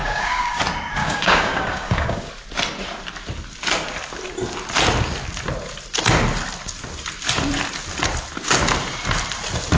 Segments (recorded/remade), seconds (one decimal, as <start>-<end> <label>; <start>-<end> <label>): 0.0-0.6 remade; 0.6-1.0 recorded; 1.0-2.3 remade; 2.3-9.8 recorded

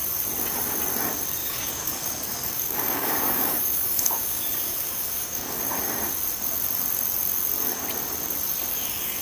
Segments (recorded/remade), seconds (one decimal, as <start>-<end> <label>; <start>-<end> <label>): 0.0-1.4 recorded; 1.4-5.6 remade; 5.6-8.7 recorded; 8.7-9.2 remade